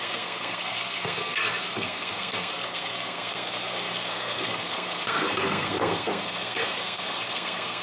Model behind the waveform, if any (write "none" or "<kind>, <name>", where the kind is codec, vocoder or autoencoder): codec, SNAC